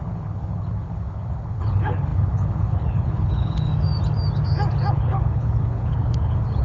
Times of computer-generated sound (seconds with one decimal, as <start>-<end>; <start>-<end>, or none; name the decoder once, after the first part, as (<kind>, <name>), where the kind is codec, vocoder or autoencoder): 0.0-3.7 (codec, HILCodec); 4.9-6.6